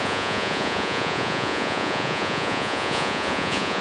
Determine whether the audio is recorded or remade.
remade